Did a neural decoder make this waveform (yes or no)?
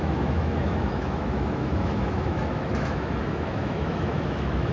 yes